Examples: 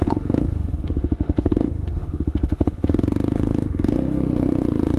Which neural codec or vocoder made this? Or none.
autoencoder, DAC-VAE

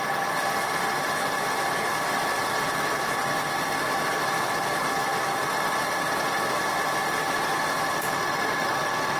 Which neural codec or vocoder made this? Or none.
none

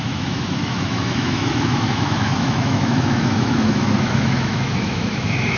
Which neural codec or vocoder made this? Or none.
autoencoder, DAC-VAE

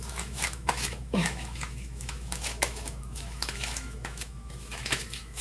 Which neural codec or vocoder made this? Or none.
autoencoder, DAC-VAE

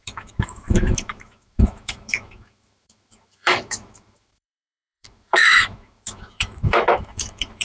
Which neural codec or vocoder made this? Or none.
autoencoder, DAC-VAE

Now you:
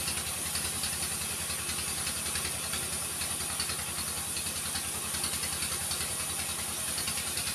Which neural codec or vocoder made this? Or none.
none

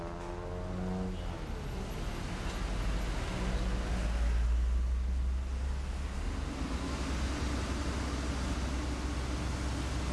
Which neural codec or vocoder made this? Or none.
none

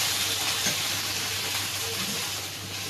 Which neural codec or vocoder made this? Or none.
none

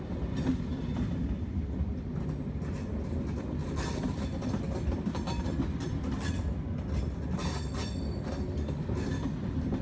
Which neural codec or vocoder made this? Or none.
none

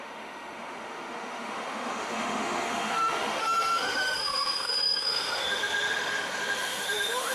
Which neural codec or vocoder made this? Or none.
autoencoder, DAC-VAE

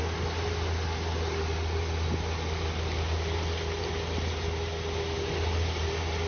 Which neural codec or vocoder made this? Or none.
none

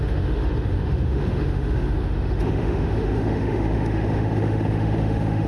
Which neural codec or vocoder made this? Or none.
autoencoder, DAC-VAE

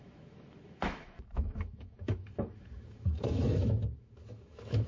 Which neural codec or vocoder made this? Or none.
autoencoder, DAC-VAE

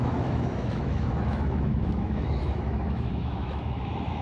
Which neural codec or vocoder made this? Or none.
autoencoder, DAC-VAE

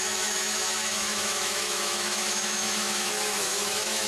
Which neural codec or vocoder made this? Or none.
autoencoder, DAC-VAE